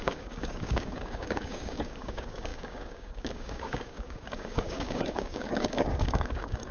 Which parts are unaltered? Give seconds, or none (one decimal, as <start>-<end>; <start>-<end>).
none